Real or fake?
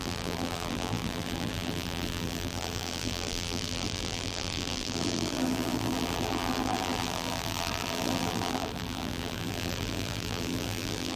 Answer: fake